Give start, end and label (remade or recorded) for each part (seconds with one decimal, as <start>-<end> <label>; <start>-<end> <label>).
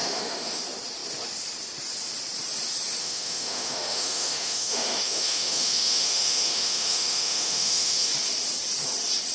0.0-0.6 remade; 0.6-3.0 recorded; 3.0-8.1 remade; 8.1-9.3 recorded